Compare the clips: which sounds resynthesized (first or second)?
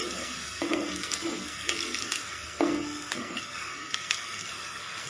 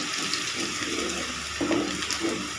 first